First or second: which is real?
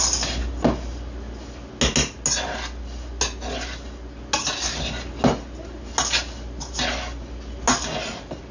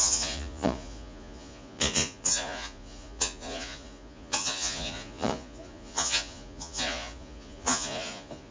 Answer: first